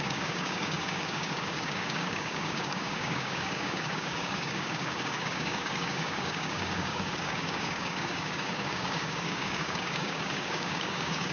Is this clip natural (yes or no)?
no